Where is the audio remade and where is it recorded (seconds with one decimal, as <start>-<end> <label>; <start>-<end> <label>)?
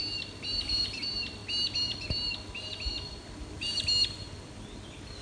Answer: 0.0-5.2 recorded